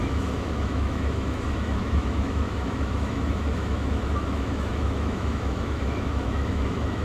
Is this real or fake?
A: fake